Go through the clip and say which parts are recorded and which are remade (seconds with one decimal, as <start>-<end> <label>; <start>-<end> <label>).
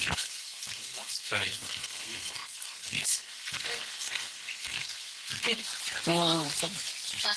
0.0-5.7 remade; 5.7-7.4 recorded